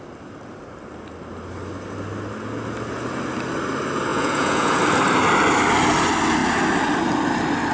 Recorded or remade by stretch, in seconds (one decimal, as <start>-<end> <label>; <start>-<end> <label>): 0.0-4.1 recorded; 4.1-4.8 remade; 4.8-7.7 recorded